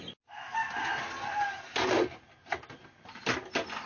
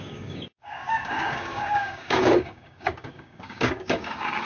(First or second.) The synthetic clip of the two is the second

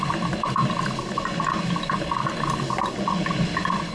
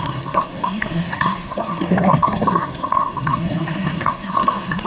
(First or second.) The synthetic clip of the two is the second